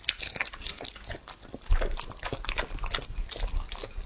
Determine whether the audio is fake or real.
real